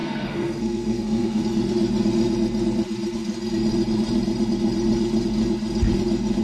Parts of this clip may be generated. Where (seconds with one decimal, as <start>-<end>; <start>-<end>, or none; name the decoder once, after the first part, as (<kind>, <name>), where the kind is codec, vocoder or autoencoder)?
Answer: 0.0-1.4 (codec, SNAC)